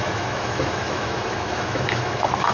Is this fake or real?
fake